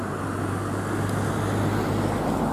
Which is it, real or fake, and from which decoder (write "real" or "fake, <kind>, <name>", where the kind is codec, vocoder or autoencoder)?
real